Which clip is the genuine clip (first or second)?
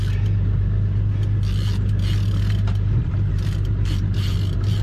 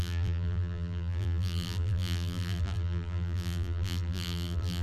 first